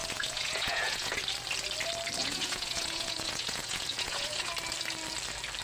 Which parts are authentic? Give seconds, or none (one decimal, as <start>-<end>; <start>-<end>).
1.2-2.2; 4.5-5.6